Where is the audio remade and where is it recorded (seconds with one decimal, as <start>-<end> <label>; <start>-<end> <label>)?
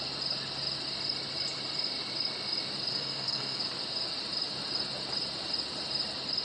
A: 0.0-2.9 recorded; 2.9-3.6 remade; 3.6-6.4 recorded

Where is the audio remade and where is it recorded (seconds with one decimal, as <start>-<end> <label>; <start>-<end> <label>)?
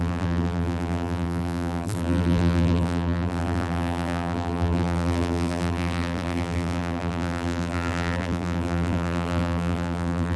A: 0.0-10.4 remade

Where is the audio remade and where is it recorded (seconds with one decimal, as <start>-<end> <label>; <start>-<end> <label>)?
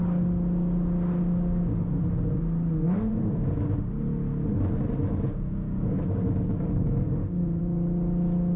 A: 0.0-3.1 recorded; 3.1-4.0 remade; 4.0-5.3 recorded; 5.3-7.6 remade; 7.6-8.6 recorded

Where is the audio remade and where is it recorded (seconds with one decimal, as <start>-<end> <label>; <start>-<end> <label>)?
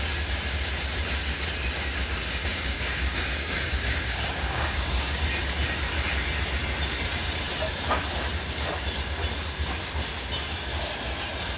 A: 0.0-2.5 recorded; 2.5-5.2 remade; 5.2-11.6 recorded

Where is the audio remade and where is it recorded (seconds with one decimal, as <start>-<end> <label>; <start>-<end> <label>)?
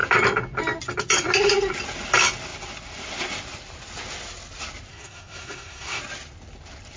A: 0.0-4.9 recorded; 4.9-6.0 remade; 6.0-7.0 recorded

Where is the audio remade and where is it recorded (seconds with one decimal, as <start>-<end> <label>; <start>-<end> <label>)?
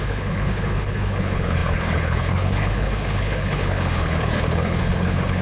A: 0.0-5.4 remade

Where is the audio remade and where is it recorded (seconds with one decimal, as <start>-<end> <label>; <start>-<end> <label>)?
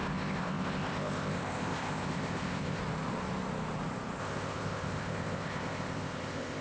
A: 0.0-2.8 remade; 2.8-4.2 recorded; 4.2-6.6 remade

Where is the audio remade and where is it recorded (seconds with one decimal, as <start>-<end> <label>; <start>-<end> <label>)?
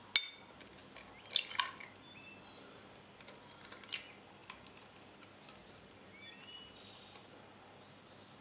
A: 0.0-8.4 recorded